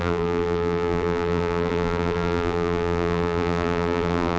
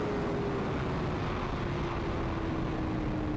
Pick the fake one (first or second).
first